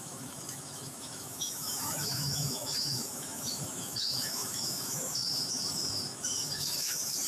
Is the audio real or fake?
fake